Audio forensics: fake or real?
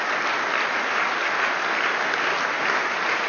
real